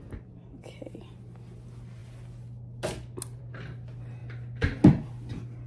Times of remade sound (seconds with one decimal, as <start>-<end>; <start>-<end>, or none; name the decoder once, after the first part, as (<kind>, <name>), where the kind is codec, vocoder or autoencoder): none